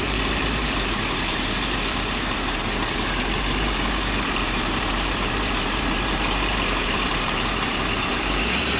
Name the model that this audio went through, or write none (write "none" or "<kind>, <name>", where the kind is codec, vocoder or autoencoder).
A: vocoder, BigVGAN v2